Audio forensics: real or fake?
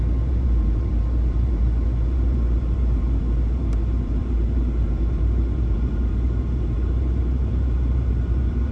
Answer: fake